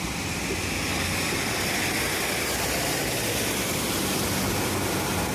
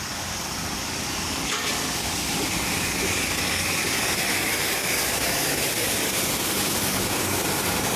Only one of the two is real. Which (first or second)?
first